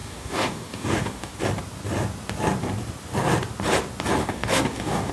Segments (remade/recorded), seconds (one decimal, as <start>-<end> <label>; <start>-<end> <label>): 0.0-1.3 remade; 1.3-4.2 recorded; 4.2-5.1 remade

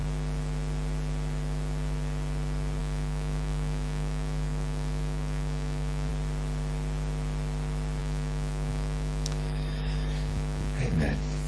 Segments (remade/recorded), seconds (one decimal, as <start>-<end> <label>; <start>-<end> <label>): 0.0-2.8 recorded; 2.8-6.1 remade; 6.1-8.0 recorded; 8.0-11.5 remade

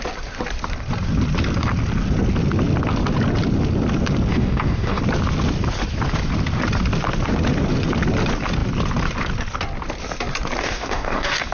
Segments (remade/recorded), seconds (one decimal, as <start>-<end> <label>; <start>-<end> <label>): 0.0-4.3 recorded; 4.3-5.0 remade; 5.0-10.6 recorded; 10.6-11.5 remade

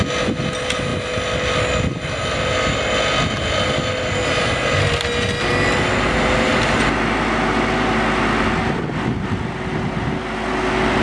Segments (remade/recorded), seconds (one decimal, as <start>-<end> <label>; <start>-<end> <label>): 0.0-11.0 recorded

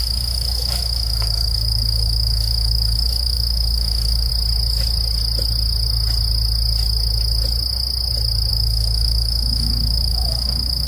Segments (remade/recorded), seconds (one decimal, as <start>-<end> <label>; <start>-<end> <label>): 0.0-4.3 remade; 4.3-8.5 recorded; 8.5-10.9 remade

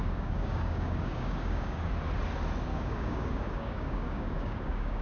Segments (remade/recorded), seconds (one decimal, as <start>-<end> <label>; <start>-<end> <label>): 0.0-1.9 remade; 1.9-2.7 recorded; 2.7-5.0 remade

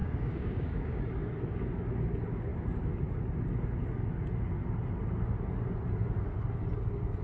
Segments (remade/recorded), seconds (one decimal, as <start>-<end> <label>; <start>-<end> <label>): 0.0-1.0 remade; 1.0-7.2 recorded

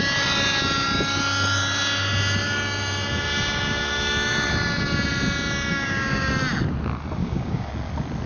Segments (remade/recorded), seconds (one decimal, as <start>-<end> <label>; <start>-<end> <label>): 0.0-5.7 recorded; 5.7-6.3 remade; 6.3-7.2 recorded; 7.2-7.7 remade; 7.7-8.3 recorded